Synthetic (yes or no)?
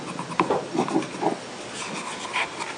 no